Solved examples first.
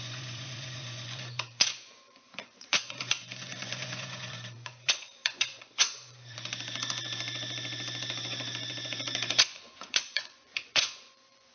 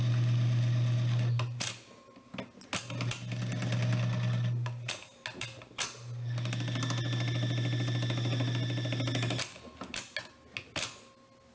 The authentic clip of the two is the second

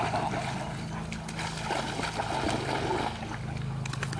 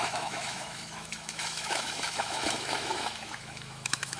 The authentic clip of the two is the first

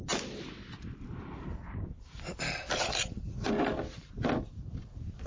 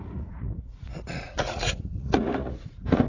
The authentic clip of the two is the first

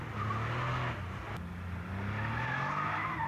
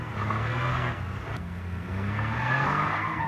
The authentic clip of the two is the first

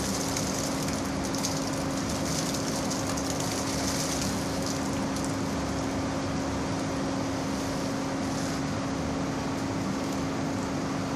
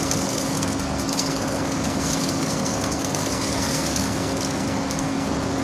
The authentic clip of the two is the first